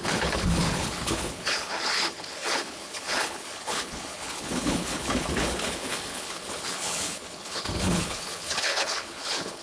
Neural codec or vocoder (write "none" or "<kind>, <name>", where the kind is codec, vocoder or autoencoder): codec, HILCodec